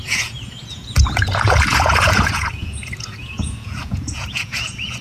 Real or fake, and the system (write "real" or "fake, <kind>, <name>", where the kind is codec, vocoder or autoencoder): fake, vocoder, Vocos